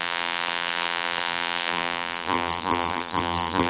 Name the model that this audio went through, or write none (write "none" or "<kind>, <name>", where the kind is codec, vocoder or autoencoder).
vocoder, BigVGAN v2